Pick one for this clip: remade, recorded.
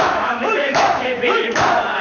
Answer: remade